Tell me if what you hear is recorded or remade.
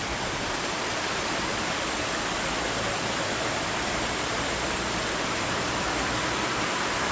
remade